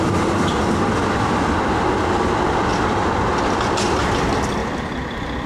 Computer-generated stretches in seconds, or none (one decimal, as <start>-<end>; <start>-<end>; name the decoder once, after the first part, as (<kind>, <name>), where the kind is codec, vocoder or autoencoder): 2.7-3.6 (vocoder, BigVGAN v2); 4.6-5.5